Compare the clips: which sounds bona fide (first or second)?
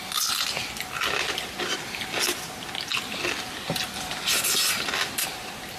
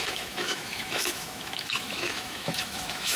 first